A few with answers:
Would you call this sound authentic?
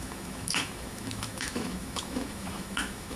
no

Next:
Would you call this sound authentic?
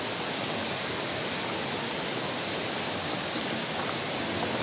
yes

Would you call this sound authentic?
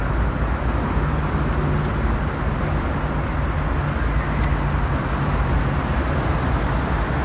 yes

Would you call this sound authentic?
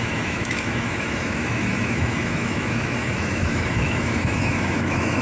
no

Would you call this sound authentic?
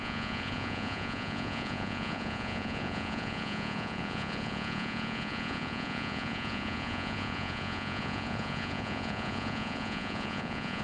no